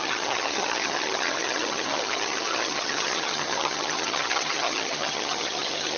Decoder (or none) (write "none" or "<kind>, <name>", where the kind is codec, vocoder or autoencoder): vocoder, HiFi-GAN